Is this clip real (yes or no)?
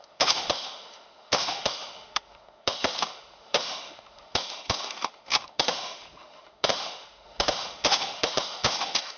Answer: no